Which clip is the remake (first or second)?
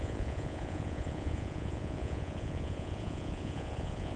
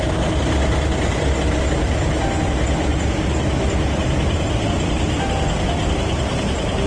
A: first